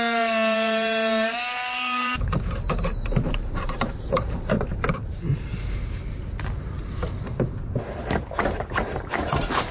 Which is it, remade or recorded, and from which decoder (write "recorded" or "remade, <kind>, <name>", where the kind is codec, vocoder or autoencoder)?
remade, vocoder, BigVGAN v2